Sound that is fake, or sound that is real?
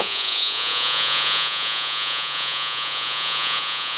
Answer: fake